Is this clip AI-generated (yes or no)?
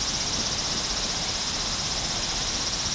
no